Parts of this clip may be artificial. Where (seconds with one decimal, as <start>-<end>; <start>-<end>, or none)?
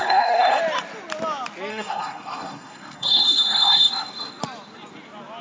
0.0-0.6; 1.7-4.4